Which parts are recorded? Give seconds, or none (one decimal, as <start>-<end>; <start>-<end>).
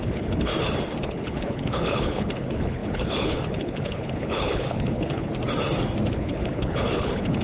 0.5-1.0; 5.3-6.1